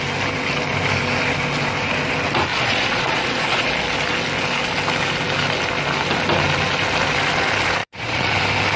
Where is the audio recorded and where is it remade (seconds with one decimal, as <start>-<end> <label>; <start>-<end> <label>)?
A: 0.0-2.5 recorded; 2.5-3.7 remade; 3.7-7.8 recorded; 7.8-8.3 remade; 8.3-8.8 recorded